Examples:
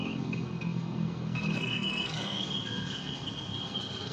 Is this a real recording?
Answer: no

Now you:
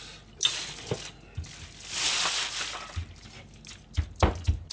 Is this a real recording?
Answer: yes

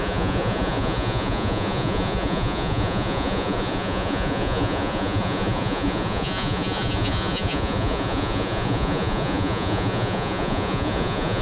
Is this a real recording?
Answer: no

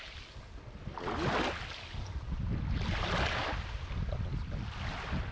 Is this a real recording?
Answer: yes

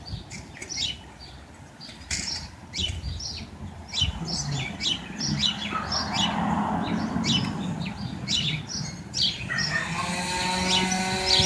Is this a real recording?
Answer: yes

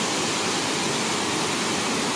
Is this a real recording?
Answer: yes